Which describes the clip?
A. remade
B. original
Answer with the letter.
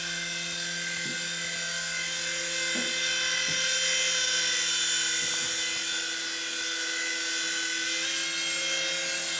B